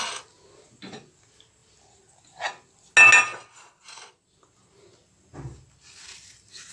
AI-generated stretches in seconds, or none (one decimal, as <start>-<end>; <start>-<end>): none